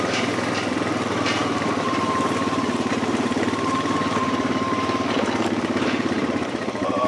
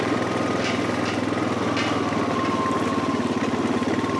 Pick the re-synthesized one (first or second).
first